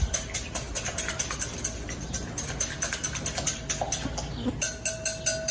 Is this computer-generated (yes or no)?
no